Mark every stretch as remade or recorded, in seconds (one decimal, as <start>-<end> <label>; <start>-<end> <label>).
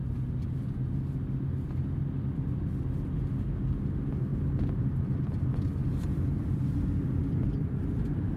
0.0-3.8 recorded; 3.8-4.3 remade; 4.3-5.0 recorded; 5.0-8.4 remade